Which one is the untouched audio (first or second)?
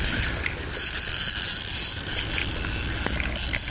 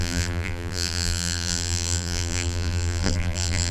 first